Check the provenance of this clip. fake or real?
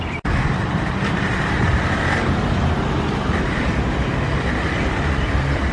fake